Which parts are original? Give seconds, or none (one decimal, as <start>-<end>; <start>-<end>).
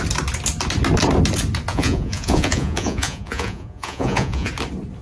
0.0-1.7; 4.5-5.0